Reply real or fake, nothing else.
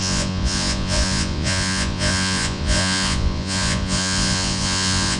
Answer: fake